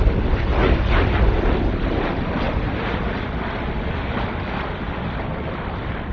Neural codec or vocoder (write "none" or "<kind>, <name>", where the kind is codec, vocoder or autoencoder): none